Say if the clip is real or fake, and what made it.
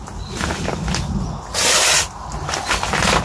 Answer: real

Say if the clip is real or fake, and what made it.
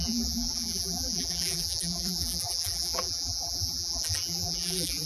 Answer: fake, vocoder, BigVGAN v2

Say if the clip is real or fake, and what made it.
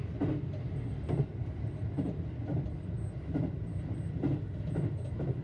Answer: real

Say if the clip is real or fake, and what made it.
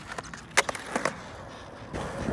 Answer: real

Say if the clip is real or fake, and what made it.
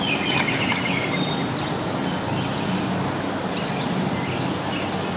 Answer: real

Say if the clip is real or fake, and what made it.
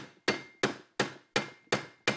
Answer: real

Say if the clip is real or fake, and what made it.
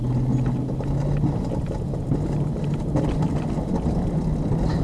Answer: real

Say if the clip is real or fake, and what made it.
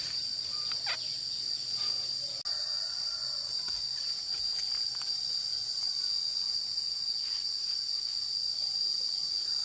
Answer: real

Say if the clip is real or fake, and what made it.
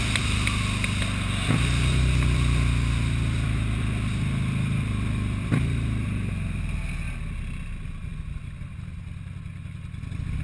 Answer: real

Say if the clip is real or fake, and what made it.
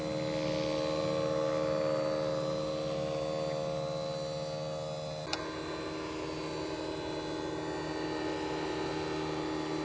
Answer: real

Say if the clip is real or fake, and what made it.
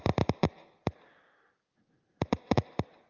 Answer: real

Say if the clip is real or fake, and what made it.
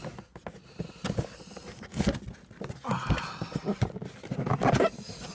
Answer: real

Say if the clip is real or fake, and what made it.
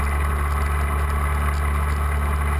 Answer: real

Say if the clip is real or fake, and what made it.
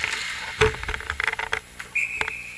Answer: real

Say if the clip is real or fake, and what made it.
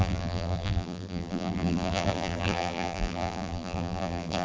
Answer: fake, vocoder, BigVGAN v2